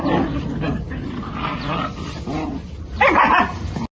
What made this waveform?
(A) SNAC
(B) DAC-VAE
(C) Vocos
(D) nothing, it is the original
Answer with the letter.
D